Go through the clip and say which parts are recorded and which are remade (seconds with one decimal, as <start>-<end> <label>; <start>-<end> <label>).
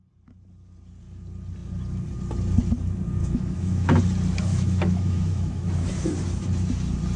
0.0-3.2 recorded; 3.2-4.0 remade; 4.0-4.5 recorded; 4.5-5.9 remade; 5.9-7.2 recorded